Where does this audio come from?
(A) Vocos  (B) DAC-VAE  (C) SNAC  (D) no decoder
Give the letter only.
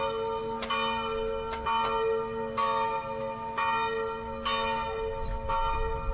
D